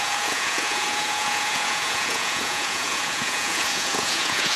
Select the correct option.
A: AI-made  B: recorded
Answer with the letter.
A